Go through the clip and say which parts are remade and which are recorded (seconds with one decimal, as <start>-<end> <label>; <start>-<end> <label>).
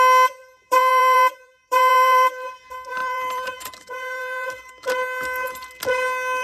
0.0-0.4 recorded; 0.4-2.5 remade; 2.5-3.0 recorded; 3.0-4.7 remade; 4.7-6.4 recorded